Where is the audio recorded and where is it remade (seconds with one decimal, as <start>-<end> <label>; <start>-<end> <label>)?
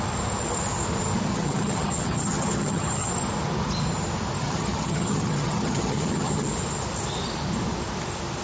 0.0-1.3 recorded; 1.3-3.1 remade; 3.1-4.4 recorded; 4.4-6.5 remade; 6.5-8.4 recorded